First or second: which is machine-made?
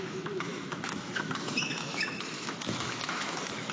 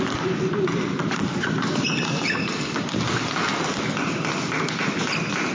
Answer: first